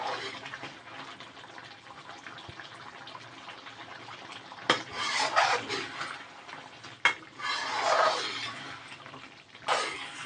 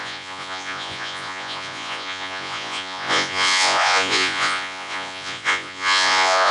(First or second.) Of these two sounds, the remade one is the second